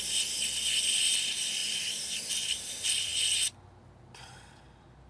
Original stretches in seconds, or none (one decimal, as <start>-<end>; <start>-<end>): 3.1-4.0